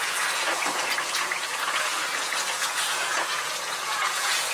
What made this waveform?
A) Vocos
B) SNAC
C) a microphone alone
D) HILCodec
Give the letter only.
A